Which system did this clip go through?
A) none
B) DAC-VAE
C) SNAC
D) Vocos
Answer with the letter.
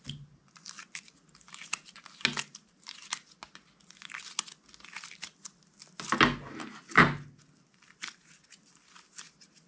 A